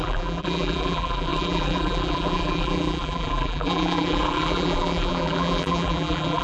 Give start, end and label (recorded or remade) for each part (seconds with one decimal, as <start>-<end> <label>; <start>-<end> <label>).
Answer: 0.0-6.4 remade